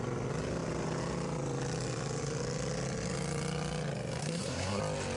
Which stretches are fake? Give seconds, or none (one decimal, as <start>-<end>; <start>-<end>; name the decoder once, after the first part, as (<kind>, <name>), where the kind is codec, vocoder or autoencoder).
4.2-4.8 (codec, SNAC)